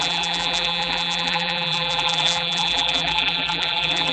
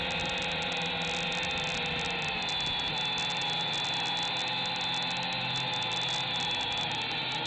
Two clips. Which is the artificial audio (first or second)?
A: first